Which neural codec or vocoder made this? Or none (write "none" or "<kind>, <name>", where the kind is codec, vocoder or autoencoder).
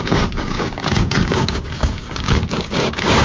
codec, DAC